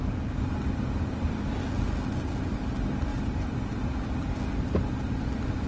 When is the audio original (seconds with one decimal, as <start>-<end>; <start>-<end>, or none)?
0.0-3.1; 3.7-5.7

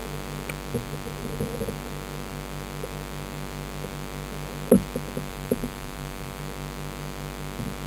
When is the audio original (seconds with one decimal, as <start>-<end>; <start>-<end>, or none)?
0.0-5.3; 6.4-7.9

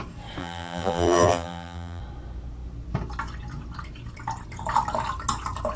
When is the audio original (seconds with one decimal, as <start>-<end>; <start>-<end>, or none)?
0.0-0.4; 2.0-5.8

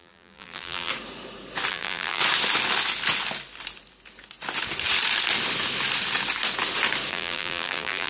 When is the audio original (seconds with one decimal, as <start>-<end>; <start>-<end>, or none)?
0.9-1.7; 2.2-7.1